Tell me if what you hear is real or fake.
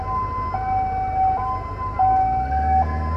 real